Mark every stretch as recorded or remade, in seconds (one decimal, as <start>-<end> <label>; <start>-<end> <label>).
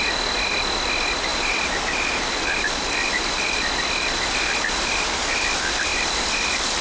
0.0-6.8 recorded